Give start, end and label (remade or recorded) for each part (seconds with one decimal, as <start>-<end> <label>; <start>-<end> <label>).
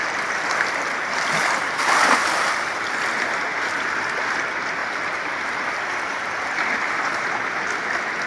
0.0-3.1 remade; 3.1-4.8 recorded; 4.8-6.1 remade; 6.1-8.3 recorded